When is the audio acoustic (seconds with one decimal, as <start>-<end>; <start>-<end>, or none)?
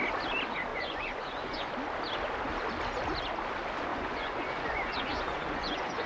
0.0-0.7; 1.7-3.9